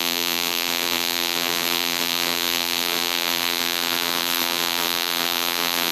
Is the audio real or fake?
fake